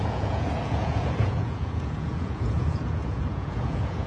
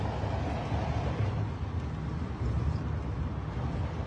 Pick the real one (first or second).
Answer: second